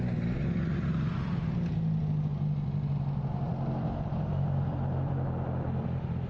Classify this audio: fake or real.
real